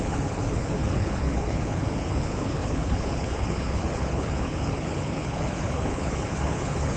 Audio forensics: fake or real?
fake